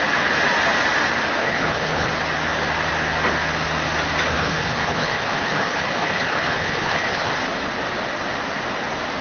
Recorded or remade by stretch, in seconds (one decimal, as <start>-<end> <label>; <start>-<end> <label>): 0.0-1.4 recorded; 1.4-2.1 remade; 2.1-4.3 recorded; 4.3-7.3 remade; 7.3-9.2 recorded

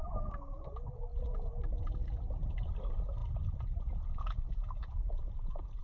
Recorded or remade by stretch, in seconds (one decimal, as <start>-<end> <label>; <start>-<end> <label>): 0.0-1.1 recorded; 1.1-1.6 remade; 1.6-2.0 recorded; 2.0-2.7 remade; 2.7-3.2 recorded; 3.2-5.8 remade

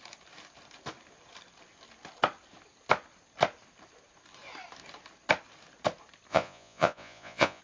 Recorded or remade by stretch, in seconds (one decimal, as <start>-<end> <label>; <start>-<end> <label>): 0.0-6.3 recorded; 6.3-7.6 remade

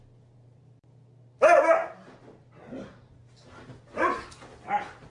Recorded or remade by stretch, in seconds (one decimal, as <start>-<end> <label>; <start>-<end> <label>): 0.0-5.1 recorded